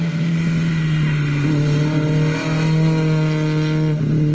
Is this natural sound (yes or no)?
yes